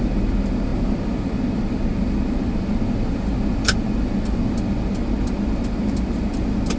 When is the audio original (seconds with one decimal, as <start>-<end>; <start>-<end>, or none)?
0.0-6.8